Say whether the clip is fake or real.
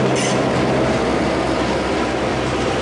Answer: real